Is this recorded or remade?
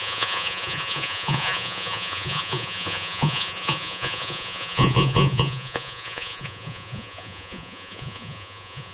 remade